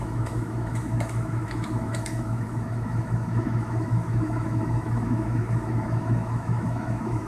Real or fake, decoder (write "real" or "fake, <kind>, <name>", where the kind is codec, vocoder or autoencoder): fake, autoencoder, DAC-VAE